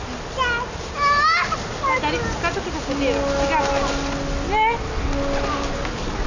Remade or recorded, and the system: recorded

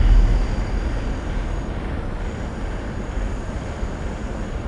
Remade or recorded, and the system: recorded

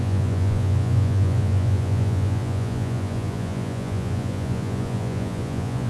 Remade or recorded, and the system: remade, vocoder, Vocos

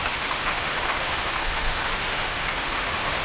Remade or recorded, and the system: remade, autoencoder, DAC-VAE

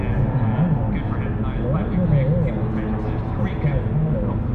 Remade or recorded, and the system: recorded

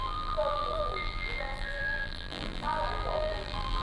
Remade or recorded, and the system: remade, vocoder, BigVGAN v2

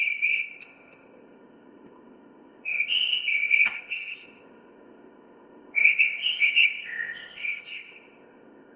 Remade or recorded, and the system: remade, codec, ZipCodec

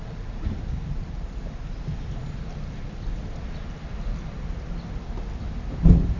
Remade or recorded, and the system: recorded